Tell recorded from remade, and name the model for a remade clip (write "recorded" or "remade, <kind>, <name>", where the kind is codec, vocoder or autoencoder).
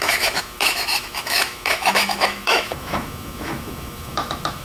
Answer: remade, autoencoder, DAC-VAE